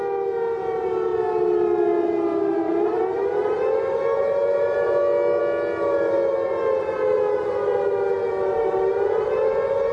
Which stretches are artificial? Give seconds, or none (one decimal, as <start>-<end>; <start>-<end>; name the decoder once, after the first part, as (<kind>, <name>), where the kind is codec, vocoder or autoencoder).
none